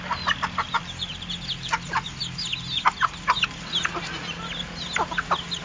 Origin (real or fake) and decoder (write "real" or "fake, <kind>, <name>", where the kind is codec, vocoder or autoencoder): real